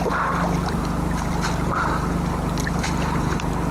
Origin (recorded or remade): recorded